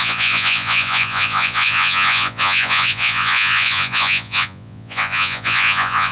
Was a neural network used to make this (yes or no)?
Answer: yes